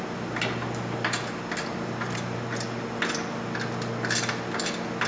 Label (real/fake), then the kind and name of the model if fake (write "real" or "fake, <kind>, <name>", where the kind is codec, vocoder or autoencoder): real